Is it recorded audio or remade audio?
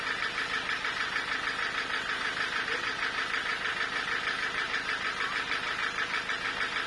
recorded